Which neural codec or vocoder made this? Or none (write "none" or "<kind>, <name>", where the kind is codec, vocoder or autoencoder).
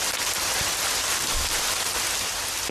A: none